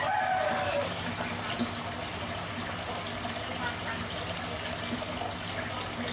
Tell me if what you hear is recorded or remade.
recorded